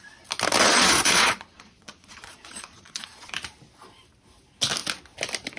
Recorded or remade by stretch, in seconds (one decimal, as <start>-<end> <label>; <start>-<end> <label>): 0.0-0.6 recorded; 0.6-3.3 remade; 3.3-5.6 recorded